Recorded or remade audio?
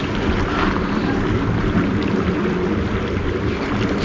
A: recorded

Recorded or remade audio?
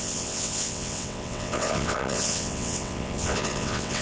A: remade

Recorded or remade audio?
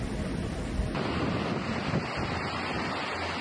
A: recorded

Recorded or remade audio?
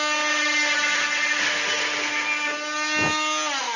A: recorded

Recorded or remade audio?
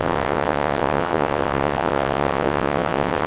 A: remade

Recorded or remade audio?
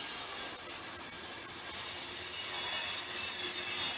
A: recorded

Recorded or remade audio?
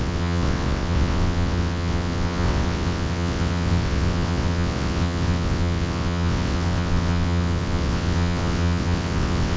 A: remade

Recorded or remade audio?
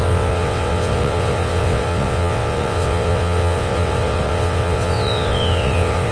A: remade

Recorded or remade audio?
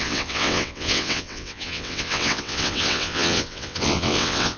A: remade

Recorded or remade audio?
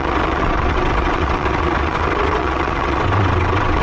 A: remade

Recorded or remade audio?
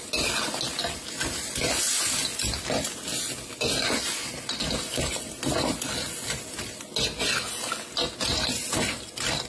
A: recorded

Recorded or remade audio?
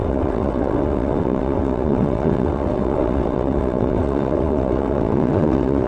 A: remade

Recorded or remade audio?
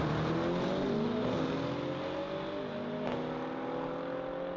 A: recorded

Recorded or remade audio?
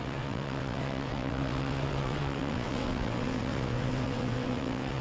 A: remade